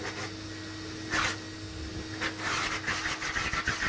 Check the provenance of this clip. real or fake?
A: real